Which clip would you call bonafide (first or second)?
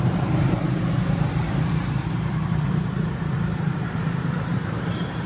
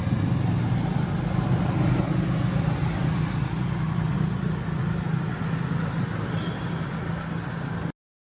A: second